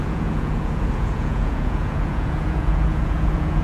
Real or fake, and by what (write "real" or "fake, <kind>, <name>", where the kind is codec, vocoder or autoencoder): fake, vocoder, Vocos